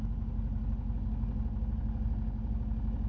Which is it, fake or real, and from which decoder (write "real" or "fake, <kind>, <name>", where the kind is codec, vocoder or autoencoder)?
real